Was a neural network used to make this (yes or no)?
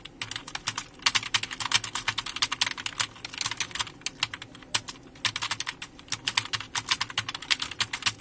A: no